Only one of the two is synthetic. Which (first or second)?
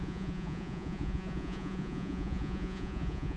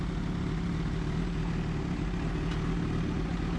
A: first